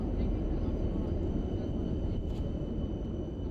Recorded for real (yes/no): yes